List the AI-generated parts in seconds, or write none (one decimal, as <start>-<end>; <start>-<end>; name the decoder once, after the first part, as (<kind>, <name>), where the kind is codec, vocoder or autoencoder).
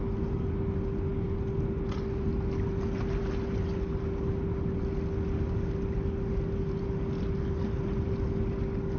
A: none